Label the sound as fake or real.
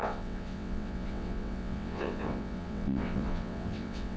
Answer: fake